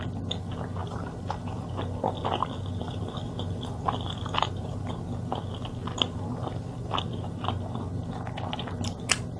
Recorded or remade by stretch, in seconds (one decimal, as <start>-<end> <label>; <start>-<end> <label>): 0.0-0.8 recorded; 0.8-1.7 remade; 1.7-2.8 recorded; 2.8-4.8 remade; 4.8-5.8 recorded; 5.8-7.0 remade; 7.0-9.4 recorded